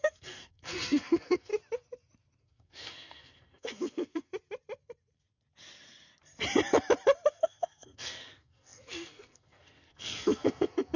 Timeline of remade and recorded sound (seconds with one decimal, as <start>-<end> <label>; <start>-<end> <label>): 0.0-1.5 remade; 1.5-2.4 recorded; 2.4-4.3 remade; 4.3-7.3 recorded; 7.3-11.0 remade